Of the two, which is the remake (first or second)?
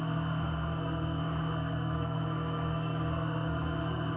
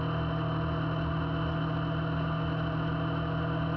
first